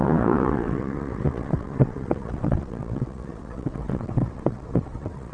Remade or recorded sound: remade